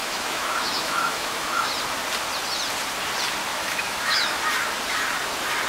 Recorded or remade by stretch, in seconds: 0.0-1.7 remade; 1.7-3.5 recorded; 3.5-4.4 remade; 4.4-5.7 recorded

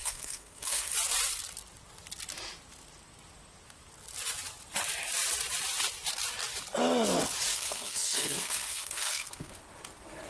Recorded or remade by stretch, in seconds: 0.0-0.9 remade; 0.9-7.5 recorded; 7.5-9.5 remade; 9.5-10.3 recorded

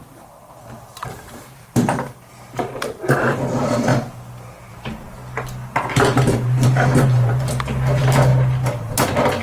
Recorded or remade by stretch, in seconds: 0.0-5.2 remade; 5.2-5.9 recorded; 5.9-8.3 remade; 8.3-9.4 recorded

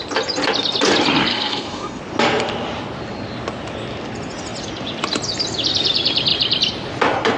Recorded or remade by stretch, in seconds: 0.0-1.3 recorded; 1.3-2.0 remade; 2.0-7.4 recorded

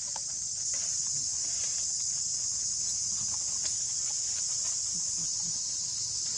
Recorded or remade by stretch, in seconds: 0.0-1.0 remade; 1.0-4.8 recorded; 4.8-6.4 remade

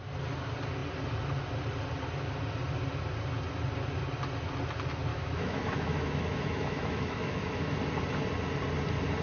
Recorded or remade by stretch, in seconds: 0.0-5.1 recorded; 5.1-7.7 remade; 7.7-9.2 recorded

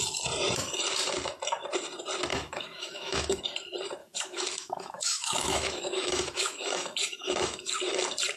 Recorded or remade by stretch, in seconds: 0.0-2.3 recorded; 2.3-3.4 remade; 3.4-4.0 recorded; 4.0-7.7 remade; 7.7-8.4 recorded